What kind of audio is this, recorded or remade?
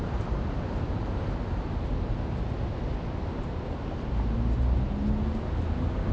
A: recorded